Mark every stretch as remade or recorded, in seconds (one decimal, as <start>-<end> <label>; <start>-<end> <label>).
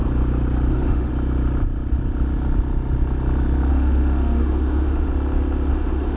0.0-0.7 recorded; 0.7-1.1 remade; 1.1-3.7 recorded; 3.7-5.1 remade; 5.1-5.7 recorded; 5.7-6.2 remade